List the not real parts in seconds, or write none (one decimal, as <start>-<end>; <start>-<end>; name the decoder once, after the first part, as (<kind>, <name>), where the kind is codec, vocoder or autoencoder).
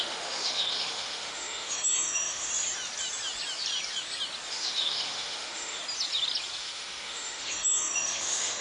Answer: 0.0-2.5 (autoencoder, DAC-VAE); 4.5-5.8; 6.6-8.6